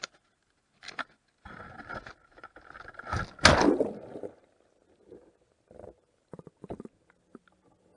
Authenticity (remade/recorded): recorded